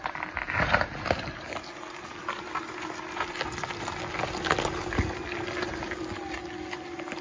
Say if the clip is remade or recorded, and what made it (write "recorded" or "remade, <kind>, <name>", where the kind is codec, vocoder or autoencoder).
recorded